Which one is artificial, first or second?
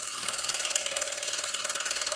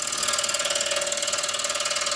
first